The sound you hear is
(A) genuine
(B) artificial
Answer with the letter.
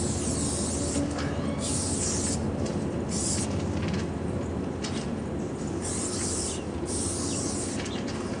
A